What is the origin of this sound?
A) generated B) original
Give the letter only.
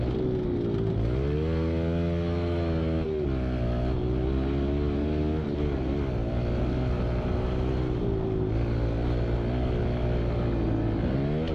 B